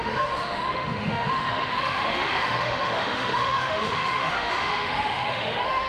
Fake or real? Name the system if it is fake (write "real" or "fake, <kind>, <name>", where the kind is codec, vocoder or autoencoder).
fake, autoencoder, DAC-VAE